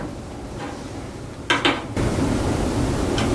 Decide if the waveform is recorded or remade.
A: recorded